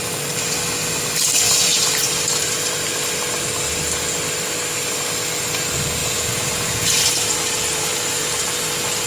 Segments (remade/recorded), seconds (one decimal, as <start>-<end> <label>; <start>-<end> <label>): 0.0-6.0 recorded; 6.0-7.0 remade; 7.0-9.1 recorded